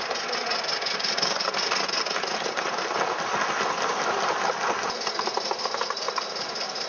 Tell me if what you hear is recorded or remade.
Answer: recorded